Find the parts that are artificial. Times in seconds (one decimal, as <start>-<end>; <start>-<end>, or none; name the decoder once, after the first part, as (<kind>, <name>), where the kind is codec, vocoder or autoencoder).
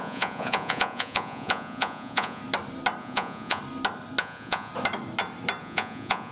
0.0-2.4 (vocoder, Vocos); 3.0-3.6; 4.2-4.7; 5.6-6.3